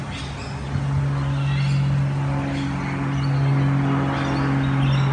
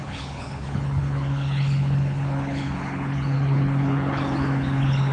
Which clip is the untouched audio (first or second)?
first